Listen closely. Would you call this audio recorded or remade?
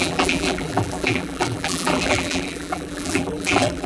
remade